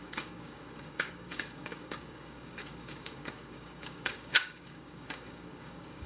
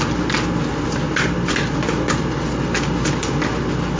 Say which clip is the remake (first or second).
first